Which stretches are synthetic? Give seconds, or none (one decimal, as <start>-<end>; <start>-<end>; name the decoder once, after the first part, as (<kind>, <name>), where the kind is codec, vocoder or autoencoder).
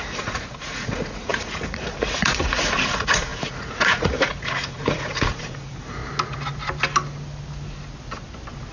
0.0-6.0 (vocoder, Vocos)